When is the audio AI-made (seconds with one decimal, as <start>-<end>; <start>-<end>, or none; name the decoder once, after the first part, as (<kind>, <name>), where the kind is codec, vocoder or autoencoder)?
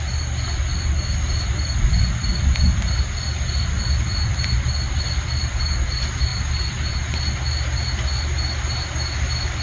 none